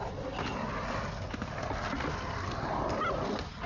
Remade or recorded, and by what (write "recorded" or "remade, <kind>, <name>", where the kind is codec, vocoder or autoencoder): recorded